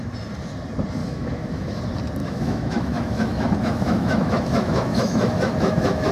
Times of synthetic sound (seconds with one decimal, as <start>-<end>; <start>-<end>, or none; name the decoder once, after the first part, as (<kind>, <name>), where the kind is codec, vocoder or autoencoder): 1.0-1.8 (autoencoder, DAC-VAE); 2.2-6.1